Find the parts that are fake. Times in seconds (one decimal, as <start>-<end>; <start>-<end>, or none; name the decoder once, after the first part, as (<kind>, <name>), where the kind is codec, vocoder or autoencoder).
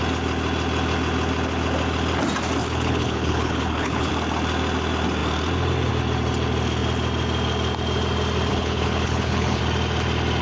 2.6-4.1 (codec, HILCodec); 8.5-9.6